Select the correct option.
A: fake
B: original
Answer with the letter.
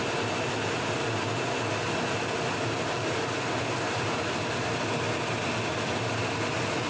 B